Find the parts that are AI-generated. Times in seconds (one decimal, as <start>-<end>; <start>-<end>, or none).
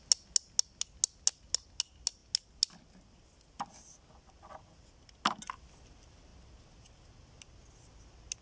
none